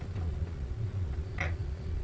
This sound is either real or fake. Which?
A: fake